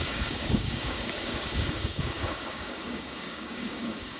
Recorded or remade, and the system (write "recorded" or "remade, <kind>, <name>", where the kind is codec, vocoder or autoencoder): remade, codec, DAC